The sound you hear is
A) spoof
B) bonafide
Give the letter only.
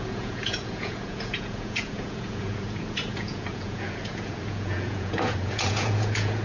A